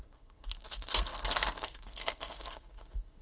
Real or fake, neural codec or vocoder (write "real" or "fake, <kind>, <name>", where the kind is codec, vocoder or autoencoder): fake, codec, SNAC